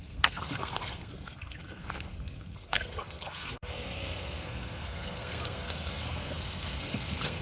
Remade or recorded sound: remade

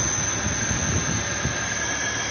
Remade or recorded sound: recorded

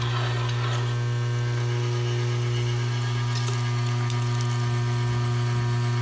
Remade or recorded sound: recorded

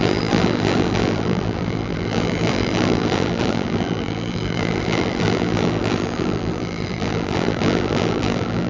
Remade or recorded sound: remade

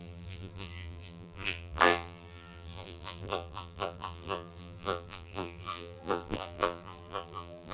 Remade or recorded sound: remade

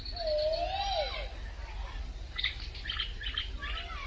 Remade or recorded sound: recorded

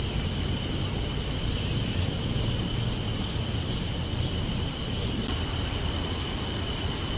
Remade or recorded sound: recorded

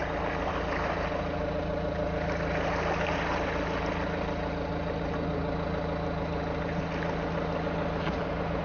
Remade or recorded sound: recorded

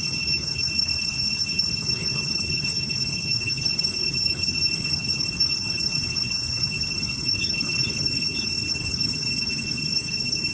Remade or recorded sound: remade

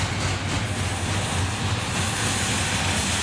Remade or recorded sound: recorded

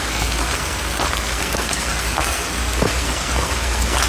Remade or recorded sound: remade